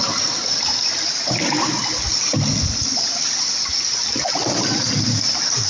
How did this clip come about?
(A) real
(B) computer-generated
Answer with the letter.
A